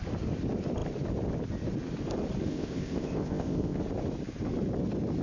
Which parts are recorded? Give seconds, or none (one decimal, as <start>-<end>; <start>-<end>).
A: 0.0-2.5; 3.8-5.2